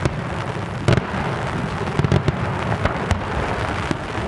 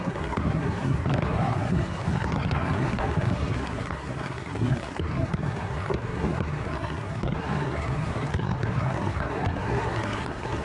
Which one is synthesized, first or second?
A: second